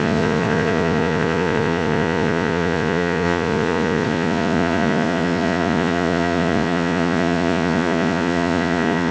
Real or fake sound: fake